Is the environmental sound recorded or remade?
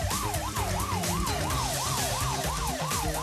remade